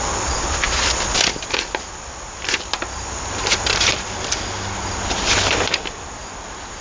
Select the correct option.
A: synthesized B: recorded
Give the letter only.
B